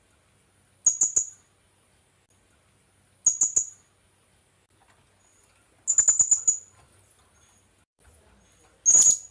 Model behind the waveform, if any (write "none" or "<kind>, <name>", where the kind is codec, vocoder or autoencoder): none